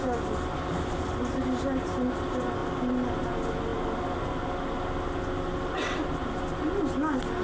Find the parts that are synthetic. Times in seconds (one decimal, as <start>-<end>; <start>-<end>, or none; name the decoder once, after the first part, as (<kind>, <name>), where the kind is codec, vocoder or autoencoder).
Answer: none

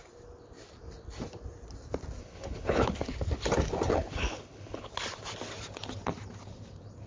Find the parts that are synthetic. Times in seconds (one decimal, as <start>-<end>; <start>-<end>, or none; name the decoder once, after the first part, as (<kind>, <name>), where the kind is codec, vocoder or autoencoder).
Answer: 2.2-3.0 (codec, HILCodec); 3.9-4.9